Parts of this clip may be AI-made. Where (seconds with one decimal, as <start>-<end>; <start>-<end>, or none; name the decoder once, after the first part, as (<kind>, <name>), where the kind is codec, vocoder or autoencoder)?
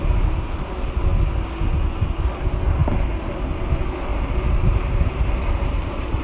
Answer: 4.1-6.2 (vocoder, BigVGAN v2)